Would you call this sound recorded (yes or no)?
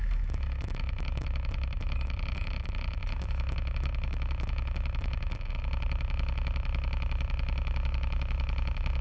no